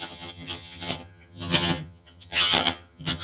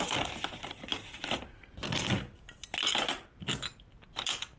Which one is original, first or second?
second